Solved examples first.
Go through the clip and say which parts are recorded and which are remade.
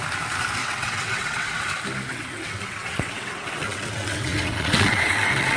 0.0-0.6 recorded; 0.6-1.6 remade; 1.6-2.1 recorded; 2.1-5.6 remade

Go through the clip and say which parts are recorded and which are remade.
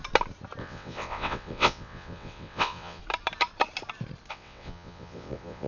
0.0-0.6 recorded; 0.6-3.0 remade; 3.0-4.3 recorded; 4.3-5.7 remade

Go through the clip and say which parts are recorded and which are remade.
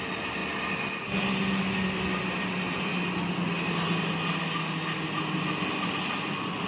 0.0-6.7 recorded